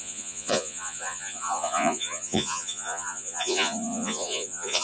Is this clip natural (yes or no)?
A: no